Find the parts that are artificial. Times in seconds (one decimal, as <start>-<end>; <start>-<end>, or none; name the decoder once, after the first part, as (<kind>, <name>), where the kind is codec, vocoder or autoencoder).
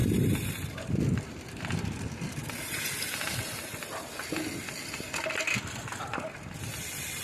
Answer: 0.0-0.5 (vocoder, BigVGAN v2)